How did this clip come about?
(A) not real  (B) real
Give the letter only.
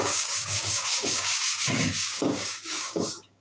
A